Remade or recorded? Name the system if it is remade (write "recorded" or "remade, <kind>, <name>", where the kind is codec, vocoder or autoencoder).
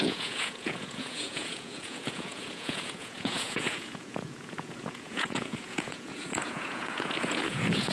remade, vocoder, Vocos